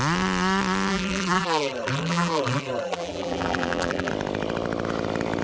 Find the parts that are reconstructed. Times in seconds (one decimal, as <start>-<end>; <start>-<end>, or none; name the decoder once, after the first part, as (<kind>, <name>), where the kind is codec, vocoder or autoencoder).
0.9-4.1 (vocoder, BigVGAN v2)